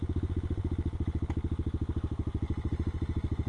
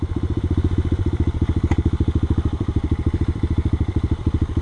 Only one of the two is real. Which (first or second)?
first